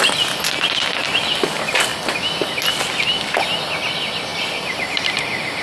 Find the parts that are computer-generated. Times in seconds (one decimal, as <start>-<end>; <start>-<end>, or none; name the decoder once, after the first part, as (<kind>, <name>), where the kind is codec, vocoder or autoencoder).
none